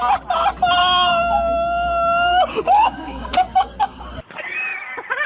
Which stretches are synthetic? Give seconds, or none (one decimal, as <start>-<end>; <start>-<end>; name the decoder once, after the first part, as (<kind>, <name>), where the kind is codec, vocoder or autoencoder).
0.8-4.0 (codec, DAC)